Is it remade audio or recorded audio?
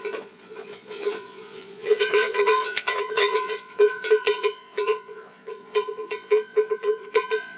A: remade